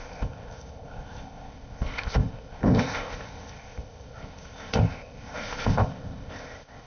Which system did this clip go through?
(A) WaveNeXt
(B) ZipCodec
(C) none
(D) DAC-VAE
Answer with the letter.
B